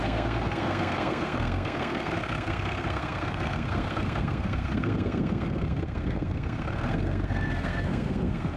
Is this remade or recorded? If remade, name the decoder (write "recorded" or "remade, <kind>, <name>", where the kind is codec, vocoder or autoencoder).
remade, codec, SNAC